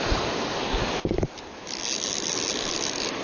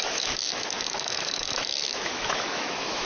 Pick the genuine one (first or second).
first